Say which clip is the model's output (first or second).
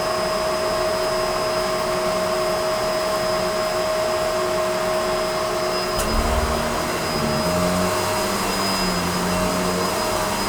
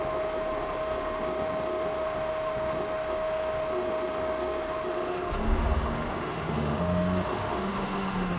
second